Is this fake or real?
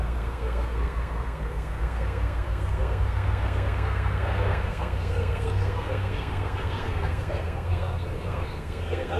fake